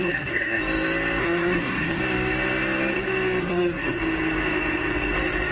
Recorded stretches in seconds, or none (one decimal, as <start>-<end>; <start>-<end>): 0.6-1.2; 2.0-3.4; 4.0-5.5